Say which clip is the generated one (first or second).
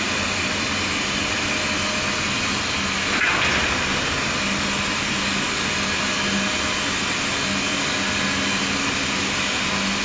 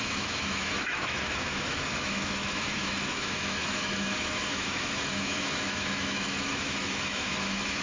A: second